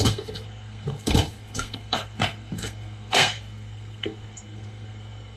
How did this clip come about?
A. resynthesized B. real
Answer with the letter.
A